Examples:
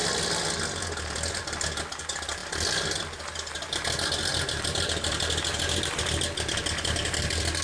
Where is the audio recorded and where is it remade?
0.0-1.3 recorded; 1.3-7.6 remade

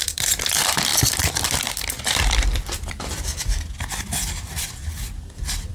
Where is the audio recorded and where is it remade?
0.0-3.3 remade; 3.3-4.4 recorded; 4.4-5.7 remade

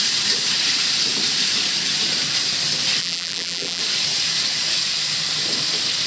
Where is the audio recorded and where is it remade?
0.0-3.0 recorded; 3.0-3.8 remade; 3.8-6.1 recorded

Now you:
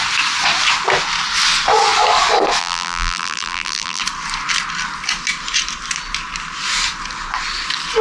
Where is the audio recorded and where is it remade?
0.0-2.6 recorded; 2.6-4.0 remade; 4.0-8.0 recorded

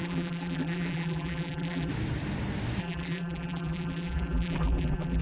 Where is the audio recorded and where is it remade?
0.0-1.9 remade; 1.9-2.8 recorded; 2.8-5.2 remade

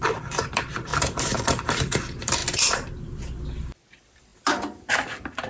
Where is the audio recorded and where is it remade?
0.0-2.4 remade; 2.4-3.9 recorded; 3.9-5.5 remade

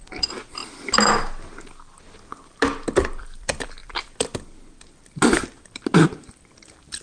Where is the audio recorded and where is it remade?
0.0-0.6 remade; 0.6-3.2 recorded; 3.2-7.0 remade